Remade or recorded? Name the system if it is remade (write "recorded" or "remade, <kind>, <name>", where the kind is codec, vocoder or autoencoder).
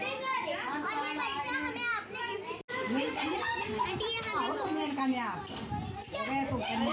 recorded